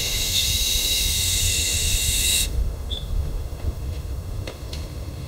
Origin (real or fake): fake